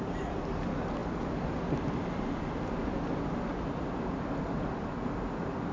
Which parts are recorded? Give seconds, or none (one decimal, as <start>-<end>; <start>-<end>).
0.0-5.7